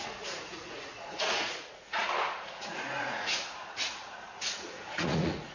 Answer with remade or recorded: remade